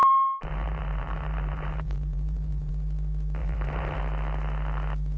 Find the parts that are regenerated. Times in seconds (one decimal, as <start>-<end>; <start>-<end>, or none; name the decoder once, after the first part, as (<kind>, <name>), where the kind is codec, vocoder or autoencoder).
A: 0.0-2.7 (vocoder, BigVGAN v2); 3.4-4.0